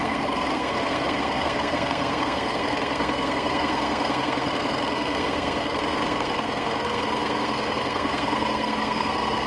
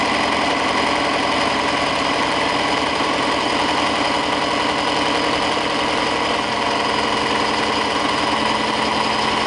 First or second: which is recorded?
second